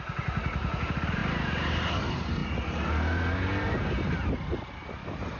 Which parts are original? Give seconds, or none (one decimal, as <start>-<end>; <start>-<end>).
0.0-5.4